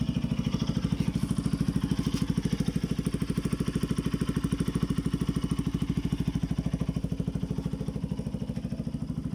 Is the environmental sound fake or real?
real